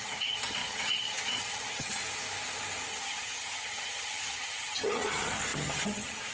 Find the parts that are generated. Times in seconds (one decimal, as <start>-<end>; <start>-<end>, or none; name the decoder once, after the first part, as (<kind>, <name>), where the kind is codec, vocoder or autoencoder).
0.0-2.0 (vocoder, HiFi-GAN); 2.9-6.3